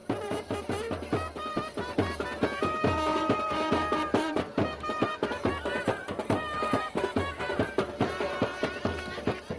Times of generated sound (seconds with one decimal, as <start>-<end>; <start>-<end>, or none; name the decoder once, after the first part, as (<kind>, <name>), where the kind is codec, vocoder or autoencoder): 0.0-0.6 (vocoder, BigVGAN v2); 3.1-7.7